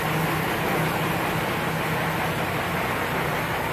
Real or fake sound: real